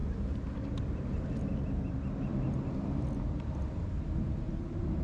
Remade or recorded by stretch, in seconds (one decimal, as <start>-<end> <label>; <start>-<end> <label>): 0.0-0.5 remade; 0.5-1.1 recorded; 1.1-1.6 remade; 1.6-2.3 recorded; 2.3-3.8 remade; 3.8-5.0 recorded